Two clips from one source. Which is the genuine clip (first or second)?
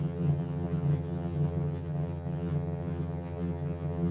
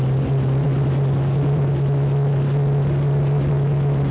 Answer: second